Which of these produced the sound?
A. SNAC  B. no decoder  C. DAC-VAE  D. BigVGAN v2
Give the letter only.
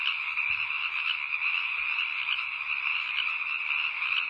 B